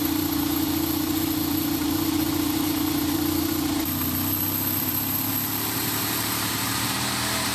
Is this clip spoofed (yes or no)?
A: yes